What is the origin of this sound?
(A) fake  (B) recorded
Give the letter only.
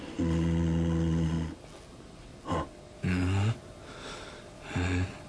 B